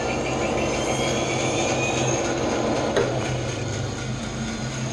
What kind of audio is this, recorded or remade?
recorded